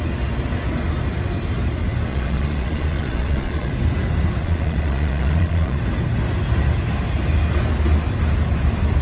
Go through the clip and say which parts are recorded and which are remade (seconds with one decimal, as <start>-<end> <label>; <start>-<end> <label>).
0.0-2.1 recorded; 2.1-3.7 remade; 3.7-4.4 recorded; 4.4-5.8 remade; 5.8-9.0 recorded